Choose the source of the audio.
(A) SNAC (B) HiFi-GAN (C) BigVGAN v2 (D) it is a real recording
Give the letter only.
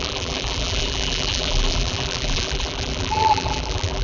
C